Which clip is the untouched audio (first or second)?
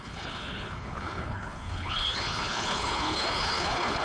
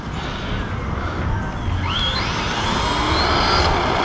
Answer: second